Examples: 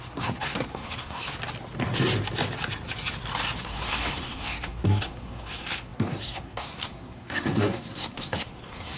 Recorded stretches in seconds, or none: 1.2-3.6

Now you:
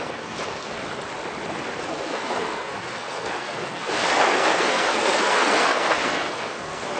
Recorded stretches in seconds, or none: 0.8-1.8

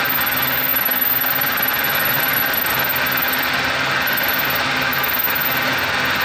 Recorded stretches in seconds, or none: 0.0-6.2

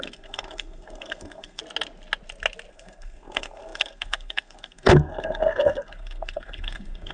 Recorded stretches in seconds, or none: 1.6-2.7